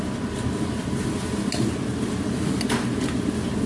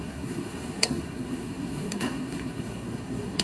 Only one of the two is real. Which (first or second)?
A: first